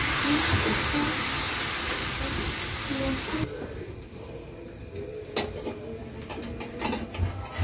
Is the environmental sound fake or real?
real